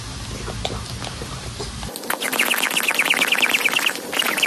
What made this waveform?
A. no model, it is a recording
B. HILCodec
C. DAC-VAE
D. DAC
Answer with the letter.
A